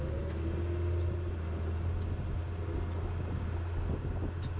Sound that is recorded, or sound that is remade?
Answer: recorded